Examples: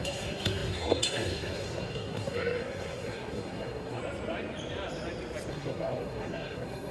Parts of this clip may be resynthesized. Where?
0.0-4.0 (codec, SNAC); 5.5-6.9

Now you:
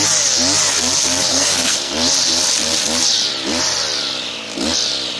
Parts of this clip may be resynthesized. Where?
1.3-1.9 (codec, SNAC)